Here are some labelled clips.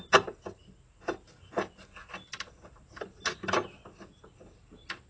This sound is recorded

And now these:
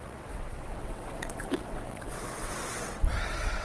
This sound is remade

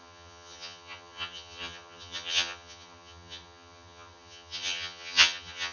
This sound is remade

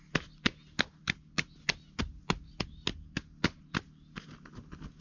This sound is recorded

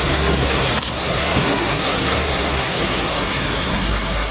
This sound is remade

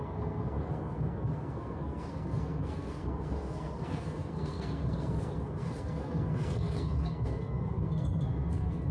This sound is remade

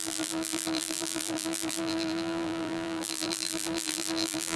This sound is remade